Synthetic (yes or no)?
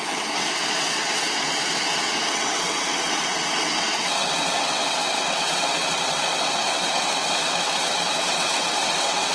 yes